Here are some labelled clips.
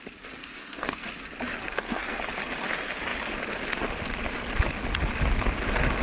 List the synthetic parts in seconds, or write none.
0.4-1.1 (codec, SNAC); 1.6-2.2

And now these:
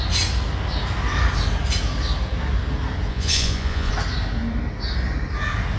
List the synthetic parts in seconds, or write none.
3.1-3.9 (vocoder, Vocos)

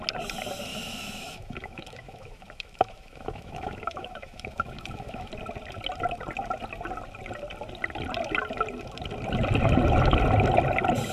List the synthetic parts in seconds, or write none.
0.7-5.3 (autoencoder, DAC-VAE)

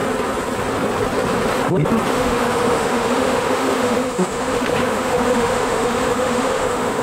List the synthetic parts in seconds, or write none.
2.1-7.0 (autoencoder, DAC-VAE)

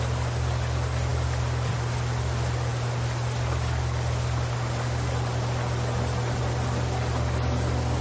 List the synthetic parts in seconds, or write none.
none

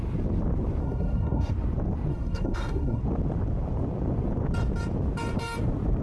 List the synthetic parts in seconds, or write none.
0.8-1.5 (codec, SNAC); 2.1-3.0